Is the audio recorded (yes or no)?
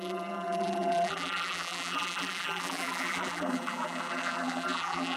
no